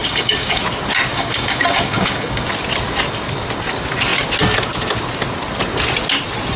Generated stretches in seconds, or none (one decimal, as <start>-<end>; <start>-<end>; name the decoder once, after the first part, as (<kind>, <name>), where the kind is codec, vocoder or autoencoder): 0.0-0.6 (codec, DAC); 1.1-2.5